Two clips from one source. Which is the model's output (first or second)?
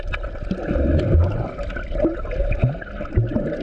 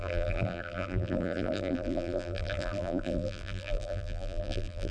second